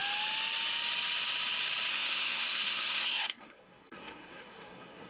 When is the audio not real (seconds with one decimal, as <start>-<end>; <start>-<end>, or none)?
1.9-5.1